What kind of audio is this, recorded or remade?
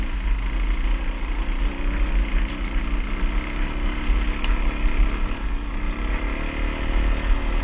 recorded